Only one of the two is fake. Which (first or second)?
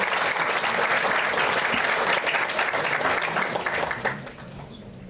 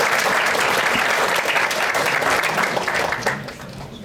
second